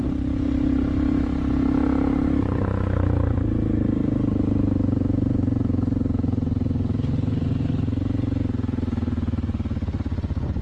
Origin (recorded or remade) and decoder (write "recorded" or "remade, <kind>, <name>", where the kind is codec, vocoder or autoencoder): recorded